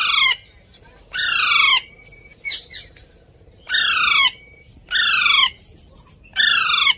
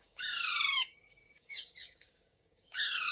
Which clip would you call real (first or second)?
first